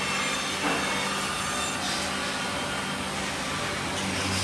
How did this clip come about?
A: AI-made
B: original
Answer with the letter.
B